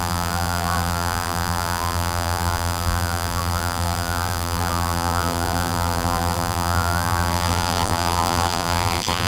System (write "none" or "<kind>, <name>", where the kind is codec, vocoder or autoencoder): vocoder, BigVGAN v2